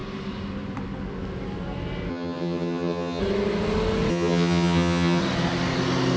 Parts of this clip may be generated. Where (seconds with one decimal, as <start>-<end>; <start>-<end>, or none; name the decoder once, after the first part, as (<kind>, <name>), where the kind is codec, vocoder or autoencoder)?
2.1-3.2 (vocoder, HiFi-GAN); 4.1-5.2